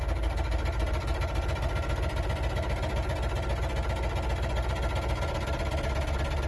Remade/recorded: recorded